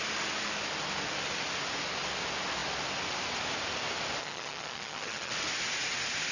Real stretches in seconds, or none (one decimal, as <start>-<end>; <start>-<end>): 0.0-4.2; 5.3-6.3